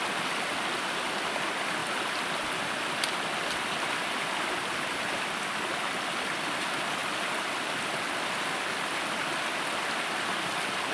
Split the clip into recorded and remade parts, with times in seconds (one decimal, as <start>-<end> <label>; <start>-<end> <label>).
0.0-10.9 recorded